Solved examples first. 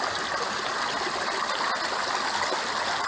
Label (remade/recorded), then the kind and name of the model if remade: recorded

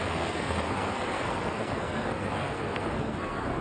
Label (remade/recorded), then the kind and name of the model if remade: remade, codec, SNAC